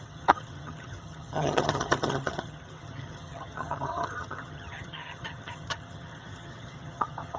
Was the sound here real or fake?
fake